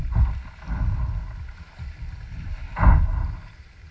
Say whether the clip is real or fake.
real